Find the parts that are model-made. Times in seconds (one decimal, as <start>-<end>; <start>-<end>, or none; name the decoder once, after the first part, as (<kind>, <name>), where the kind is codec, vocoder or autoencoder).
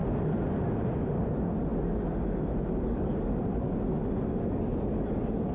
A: none